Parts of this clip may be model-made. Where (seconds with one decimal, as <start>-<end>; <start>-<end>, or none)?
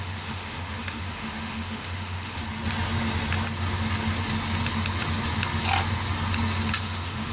0.0-2.4; 6.8-7.3